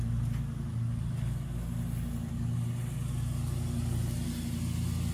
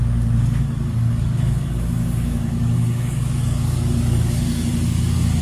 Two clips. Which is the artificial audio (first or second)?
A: second